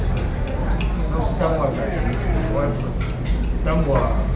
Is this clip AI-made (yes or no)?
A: no